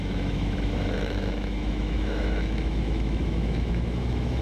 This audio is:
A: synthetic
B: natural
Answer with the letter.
A